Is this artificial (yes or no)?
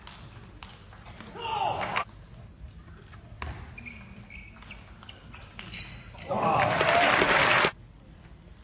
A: no